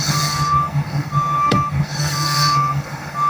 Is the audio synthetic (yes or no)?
yes